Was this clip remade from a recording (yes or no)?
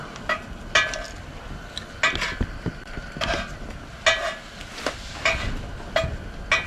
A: no